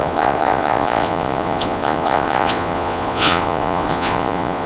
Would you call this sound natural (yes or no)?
no